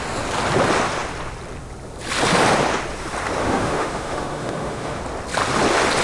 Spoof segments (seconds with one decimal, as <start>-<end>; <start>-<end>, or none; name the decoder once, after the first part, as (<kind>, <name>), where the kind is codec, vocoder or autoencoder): 3.4-5.0 (autoencoder, DAC-VAE)

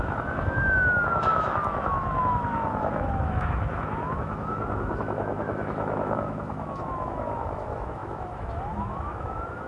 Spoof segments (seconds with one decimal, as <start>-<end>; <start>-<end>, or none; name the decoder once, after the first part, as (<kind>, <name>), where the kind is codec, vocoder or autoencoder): 0.0-9.7 (autoencoder, DAC-VAE)